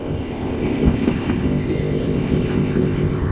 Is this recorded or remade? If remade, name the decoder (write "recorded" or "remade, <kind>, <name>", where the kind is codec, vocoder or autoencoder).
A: remade, codec, ZipCodec